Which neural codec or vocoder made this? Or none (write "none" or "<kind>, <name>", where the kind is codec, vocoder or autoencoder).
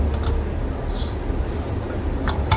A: none